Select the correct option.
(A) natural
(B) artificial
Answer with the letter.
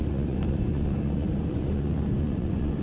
B